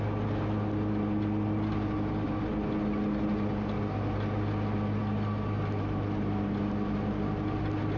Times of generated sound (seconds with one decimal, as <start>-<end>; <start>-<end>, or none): none